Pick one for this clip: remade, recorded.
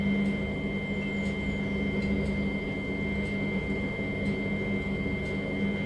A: recorded